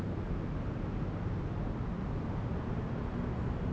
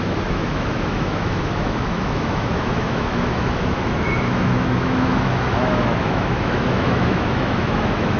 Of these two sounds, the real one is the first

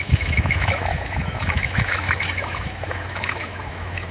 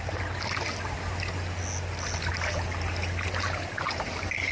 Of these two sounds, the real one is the second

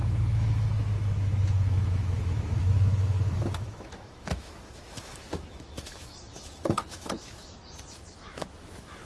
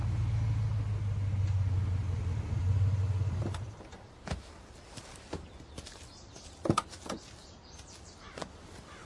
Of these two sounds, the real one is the second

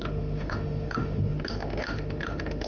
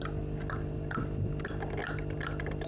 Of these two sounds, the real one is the second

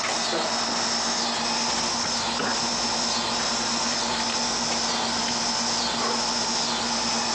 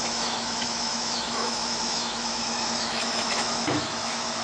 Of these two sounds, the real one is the first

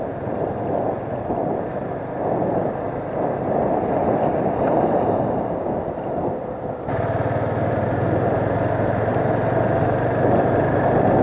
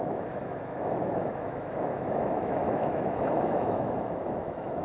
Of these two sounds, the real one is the first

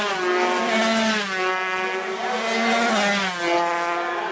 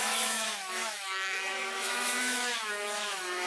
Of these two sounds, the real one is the first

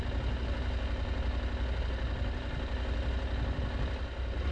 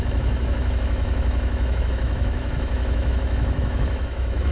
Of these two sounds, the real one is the first